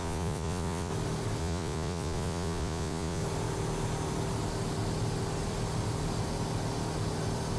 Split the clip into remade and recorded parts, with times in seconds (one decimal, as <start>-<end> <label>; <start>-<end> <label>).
0.0-0.9 remade; 0.9-1.4 recorded; 1.4-3.2 remade; 3.2-7.6 recorded